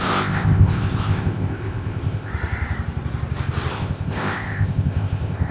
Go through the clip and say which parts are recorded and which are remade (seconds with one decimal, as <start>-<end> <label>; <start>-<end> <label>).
0.0-2.3 remade; 2.3-3.7 recorded; 3.7-5.5 remade